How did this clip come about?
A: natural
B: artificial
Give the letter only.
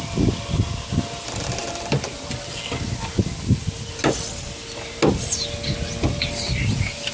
A